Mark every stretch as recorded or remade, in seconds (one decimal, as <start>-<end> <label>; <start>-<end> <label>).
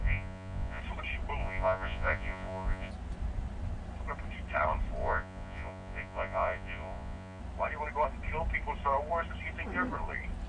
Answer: 0.0-0.8 remade; 0.8-1.4 recorded; 1.4-2.9 remade; 2.9-5.0 recorded; 5.0-7.4 remade; 7.4-10.5 recorded